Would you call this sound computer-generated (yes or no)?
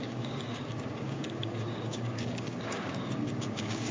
yes